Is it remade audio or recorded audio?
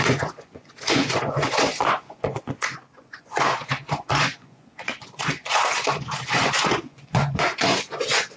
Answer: remade